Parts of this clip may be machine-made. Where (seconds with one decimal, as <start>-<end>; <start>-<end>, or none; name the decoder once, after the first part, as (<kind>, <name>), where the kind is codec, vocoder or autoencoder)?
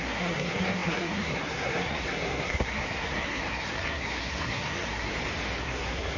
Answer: 0.0-5.1 (codec, SNAC); 5.6-6.2